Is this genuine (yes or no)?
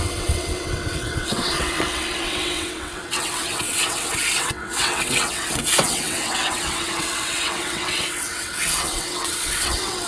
no